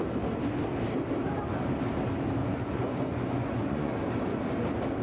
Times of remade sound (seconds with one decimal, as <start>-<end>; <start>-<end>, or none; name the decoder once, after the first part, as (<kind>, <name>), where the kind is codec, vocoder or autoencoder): 2.4-3.9 (vocoder, Vocos)